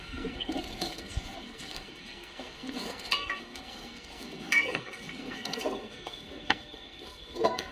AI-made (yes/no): yes